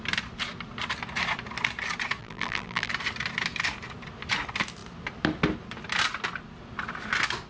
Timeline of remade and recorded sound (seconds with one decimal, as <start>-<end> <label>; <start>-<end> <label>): 0.0-2.2 recorded; 2.2-2.9 remade; 2.9-7.5 recorded